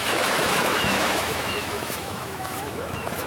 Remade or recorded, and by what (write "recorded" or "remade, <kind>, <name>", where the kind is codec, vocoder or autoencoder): remade, autoencoder, DAC-VAE